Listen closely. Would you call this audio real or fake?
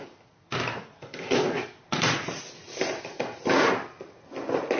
real